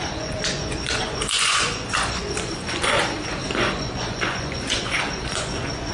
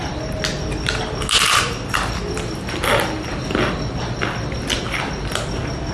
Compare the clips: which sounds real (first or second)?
second